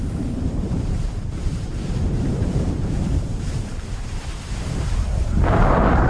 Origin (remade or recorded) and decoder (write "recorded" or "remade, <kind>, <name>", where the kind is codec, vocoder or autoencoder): remade, vocoder, BigVGAN v2